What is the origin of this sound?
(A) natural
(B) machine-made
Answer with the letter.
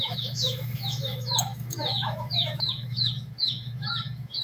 B